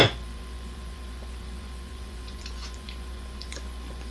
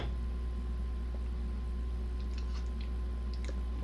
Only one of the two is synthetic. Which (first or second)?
first